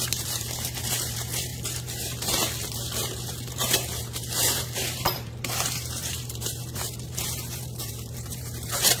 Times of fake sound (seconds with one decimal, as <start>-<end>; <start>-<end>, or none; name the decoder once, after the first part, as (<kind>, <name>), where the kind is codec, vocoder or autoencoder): 0.0-9.0 (vocoder, BigVGAN v2)